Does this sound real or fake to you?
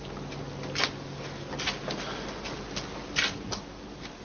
real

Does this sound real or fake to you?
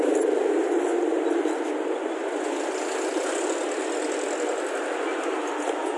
real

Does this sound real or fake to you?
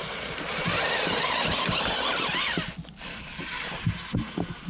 real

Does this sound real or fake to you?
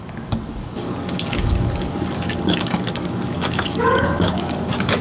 fake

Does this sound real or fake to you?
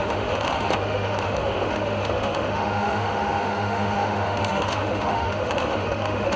fake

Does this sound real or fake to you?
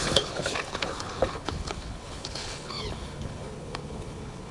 fake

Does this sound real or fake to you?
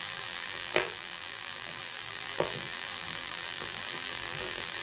fake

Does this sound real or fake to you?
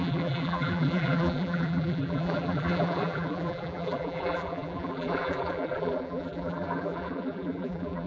fake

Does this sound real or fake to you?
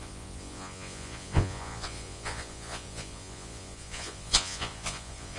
fake